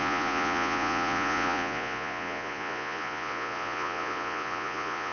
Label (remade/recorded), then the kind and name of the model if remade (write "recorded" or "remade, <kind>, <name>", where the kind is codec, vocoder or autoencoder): remade, vocoder, Vocos